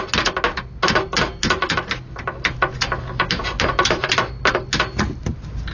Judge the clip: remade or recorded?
recorded